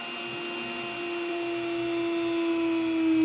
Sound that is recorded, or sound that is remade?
recorded